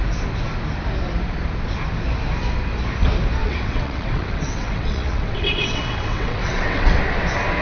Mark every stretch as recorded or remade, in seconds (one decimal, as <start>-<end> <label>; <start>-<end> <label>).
0.0-3.4 recorded; 3.4-7.0 remade; 7.0-7.6 recorded

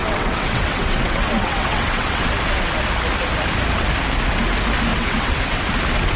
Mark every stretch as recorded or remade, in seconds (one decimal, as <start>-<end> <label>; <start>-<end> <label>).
0.0-2.3 remade; 2.3-4.9 recorded; 4.9-5.6 remade; 5.6-6.2 recorded

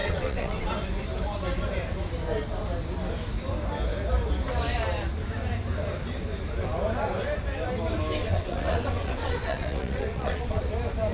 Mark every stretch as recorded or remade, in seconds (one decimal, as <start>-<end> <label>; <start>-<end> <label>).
0.0-0.7 remade; 0.7-8.2 recorded; 8.2-10.7 remade; 10.7-11.1 recorded

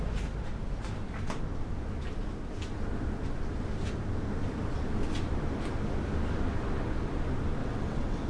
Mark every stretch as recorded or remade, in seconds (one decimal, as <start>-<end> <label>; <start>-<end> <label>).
0.0-7.6 recorded; 7.6-8.3 remade

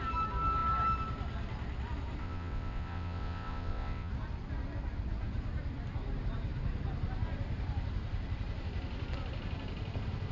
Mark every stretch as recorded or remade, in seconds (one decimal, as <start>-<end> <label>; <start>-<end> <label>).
0.0-2.2 recorded; 2.2-4.1 remade; 4.1-10.3 recorded